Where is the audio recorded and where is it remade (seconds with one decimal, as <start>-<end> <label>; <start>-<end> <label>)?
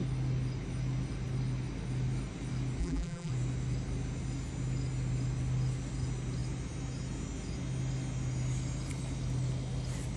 0.0-2.8 recorded; 2.8-3.3 remade; 3.3-10.2 recorded